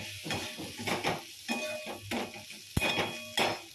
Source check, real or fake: real